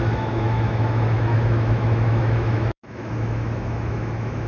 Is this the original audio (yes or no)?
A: no